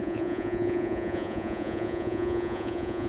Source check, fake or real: fake